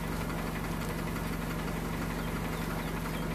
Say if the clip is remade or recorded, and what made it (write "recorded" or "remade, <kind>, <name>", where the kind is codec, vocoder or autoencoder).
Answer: recorded